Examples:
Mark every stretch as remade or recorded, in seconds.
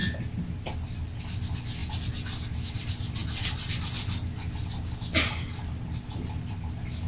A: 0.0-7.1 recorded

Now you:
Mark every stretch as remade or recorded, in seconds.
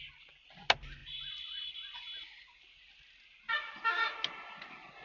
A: 0.0-5.0 recorded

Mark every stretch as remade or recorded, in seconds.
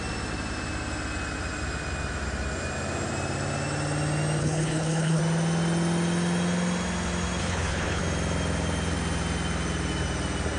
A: 0.0-4.4 recorded; 4.4-5.2 remade; 5.2-7.4 recorded; 7.4-8.0 remade; 8.0-10.6 recorded